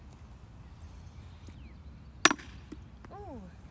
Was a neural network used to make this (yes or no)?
no